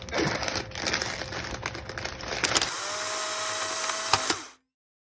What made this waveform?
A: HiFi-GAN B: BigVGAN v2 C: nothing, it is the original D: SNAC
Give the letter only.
C